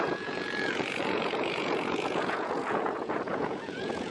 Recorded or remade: remade